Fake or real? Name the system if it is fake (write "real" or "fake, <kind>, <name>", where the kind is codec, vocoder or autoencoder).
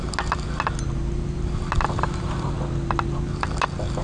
real